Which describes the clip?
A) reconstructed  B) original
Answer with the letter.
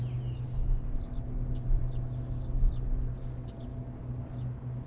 B